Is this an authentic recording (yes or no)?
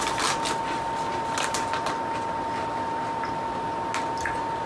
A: yes